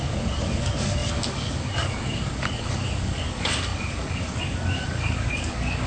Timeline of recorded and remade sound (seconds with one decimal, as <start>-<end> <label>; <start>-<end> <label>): 0.0-5.9 remade